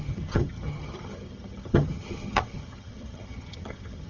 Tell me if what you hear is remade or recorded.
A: remade